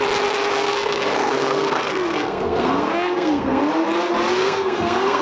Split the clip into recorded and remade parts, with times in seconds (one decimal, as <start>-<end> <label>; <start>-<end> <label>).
0.0-0.5 recorded; 0.5-3.6 remade; 3.6-4.4 recorded; 4.4-5.2 remade